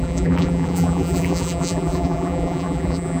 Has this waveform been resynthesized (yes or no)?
yes